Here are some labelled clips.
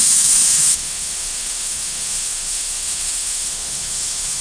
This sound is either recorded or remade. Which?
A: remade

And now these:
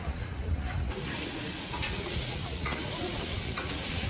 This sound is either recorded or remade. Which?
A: remade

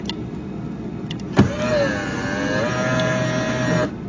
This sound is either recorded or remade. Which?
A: recorded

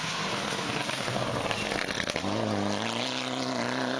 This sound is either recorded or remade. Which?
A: recorded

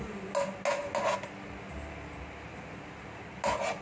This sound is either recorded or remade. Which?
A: recorded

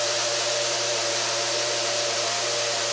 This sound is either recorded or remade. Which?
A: remade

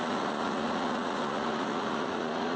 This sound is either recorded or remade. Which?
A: remade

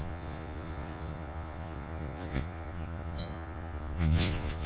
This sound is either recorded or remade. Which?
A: remade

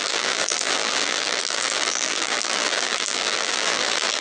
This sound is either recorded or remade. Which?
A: remade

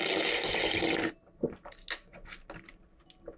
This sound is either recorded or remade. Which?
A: recorded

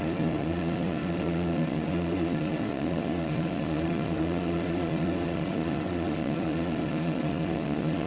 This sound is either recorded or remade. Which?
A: remade